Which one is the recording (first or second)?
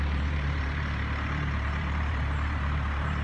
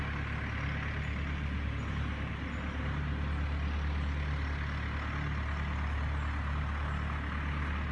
second